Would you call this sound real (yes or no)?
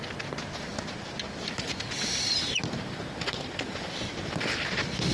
yes